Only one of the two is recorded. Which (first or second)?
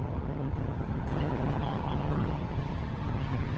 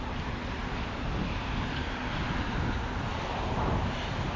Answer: second